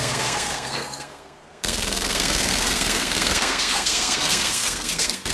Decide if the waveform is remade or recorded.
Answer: remade